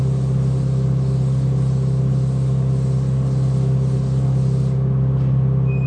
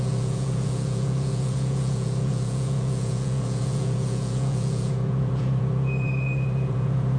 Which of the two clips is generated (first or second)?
second